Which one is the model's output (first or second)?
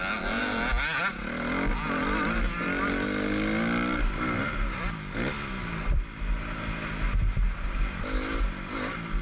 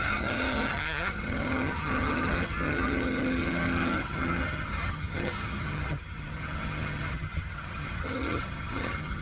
second